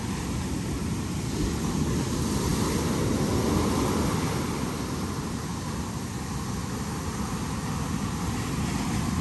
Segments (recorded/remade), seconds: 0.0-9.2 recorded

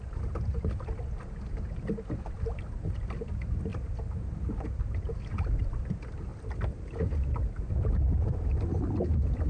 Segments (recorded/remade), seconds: 0.0-9.5 recorded

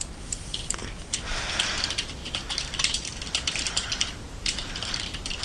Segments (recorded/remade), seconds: 0.0-2.2 recorded; 2.2-5.4 remade

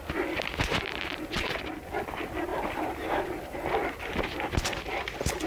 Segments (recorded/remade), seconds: 0.0-0.7 recorded; 0.7-1.6 remade; 1.6-2.5 recorded; 2.5-3.7 remade; 3.7-5.5 recorded